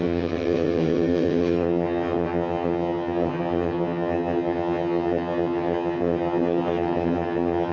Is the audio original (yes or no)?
no